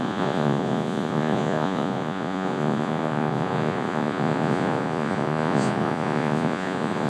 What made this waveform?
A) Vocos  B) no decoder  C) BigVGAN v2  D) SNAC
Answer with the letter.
A